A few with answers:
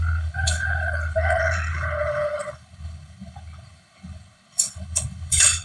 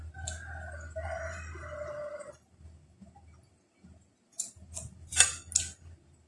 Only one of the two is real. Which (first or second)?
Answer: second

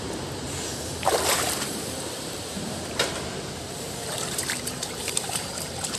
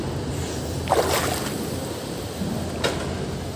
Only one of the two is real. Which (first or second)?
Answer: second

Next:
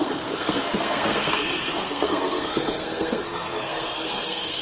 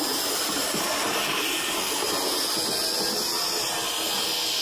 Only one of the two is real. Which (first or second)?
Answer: second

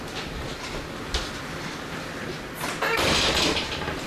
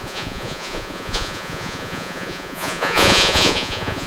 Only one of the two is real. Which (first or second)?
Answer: first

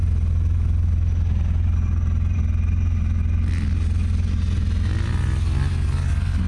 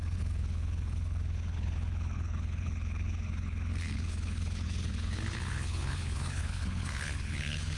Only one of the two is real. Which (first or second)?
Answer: first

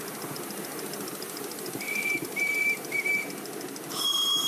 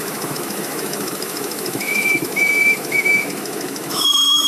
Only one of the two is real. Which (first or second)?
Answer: first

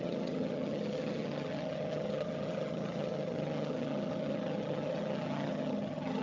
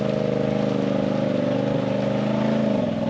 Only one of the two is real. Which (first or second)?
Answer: second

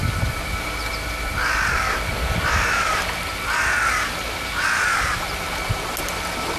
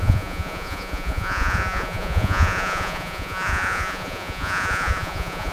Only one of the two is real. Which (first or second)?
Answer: first